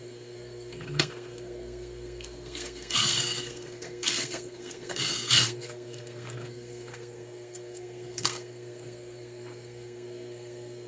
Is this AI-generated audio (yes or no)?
yes